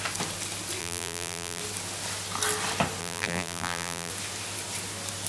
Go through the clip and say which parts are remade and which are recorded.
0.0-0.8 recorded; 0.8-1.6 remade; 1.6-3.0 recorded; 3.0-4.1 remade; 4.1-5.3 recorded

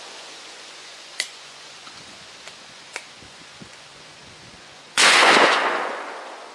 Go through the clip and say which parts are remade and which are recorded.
0.0-6.5 remade

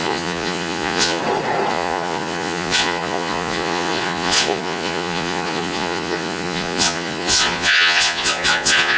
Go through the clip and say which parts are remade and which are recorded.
0.0-1.2 remade; 1.2-1.7 recorded; 1.7-9.0 remade

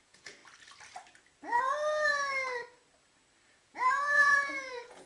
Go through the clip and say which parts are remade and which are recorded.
0.0-0.4 remade; 0.4-3.5 recorded; 3.5-5.1 remade